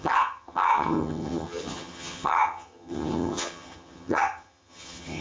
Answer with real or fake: fake